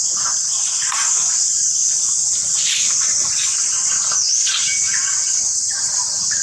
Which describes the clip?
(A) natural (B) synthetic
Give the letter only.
A